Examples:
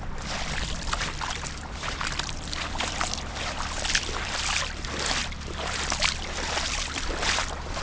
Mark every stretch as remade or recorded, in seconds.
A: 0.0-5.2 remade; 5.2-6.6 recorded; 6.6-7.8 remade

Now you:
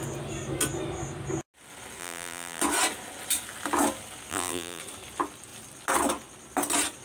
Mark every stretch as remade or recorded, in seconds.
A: 0.0-2.0 recorded; 2.0-2.6 remade; 2.6-4.3 recorded; 4.3-4.8 remade; 4.8-7.0 recorded

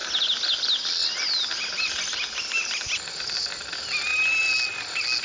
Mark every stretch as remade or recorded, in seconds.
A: 0.0-0.5 recorded; 0.5-1.0 remade; 1.0-2.4 recorded; 2.4-4.1 remade; 4.1-5.2 recorded